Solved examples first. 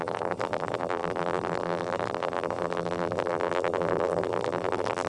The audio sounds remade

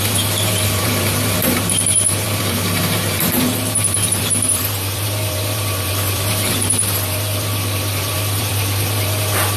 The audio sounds remade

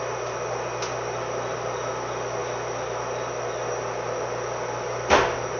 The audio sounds recorded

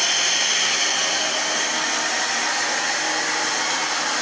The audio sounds recorded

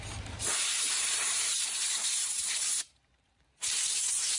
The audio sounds remade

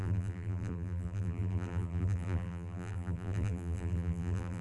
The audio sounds remade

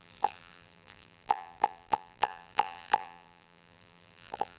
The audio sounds remade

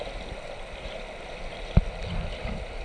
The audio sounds recorded